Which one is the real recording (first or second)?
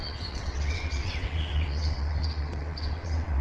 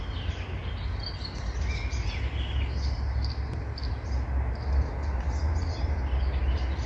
second